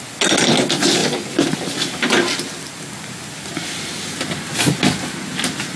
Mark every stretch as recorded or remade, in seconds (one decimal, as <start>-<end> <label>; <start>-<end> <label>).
0.0-5.8 recorded